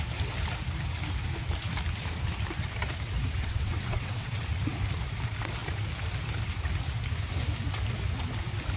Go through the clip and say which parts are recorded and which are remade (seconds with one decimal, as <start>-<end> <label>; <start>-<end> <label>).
0.0-3.4 recorded; 3.4-4.4 remade; 4.4-8.8 recorded